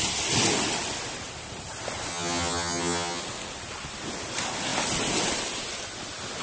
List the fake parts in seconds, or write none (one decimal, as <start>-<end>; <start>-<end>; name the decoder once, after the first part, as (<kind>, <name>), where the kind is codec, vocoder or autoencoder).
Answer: 2.1-3.2 (vocoder, HiFi-GAN)